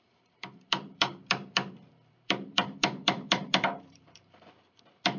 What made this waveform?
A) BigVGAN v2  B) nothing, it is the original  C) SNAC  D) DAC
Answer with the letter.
A